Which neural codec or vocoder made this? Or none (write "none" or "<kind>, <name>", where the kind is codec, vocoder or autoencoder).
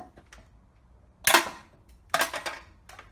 none